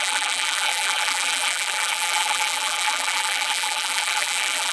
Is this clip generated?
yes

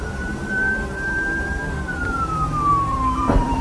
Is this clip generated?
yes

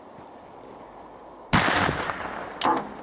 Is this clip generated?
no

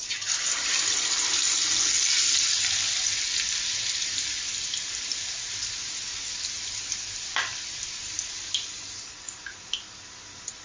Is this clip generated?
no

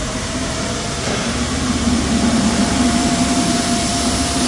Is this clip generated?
yes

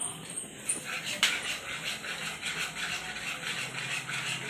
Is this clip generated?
no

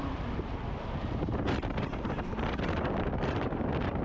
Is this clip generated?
yes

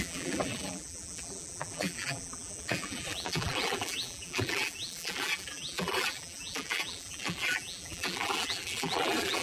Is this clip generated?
yes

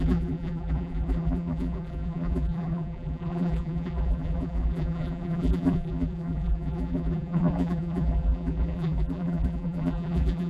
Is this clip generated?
yes